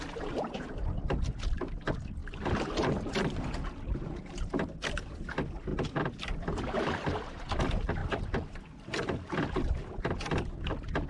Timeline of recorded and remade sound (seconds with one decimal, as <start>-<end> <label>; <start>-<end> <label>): 0.0-2.2 remade; 2.2-2.9 recorded; 2.9-5.7 remade; 5.7-6.2 recorded; 6.2-11.1 remade